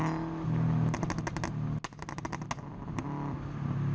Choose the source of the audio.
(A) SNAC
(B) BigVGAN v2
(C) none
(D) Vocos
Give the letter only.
C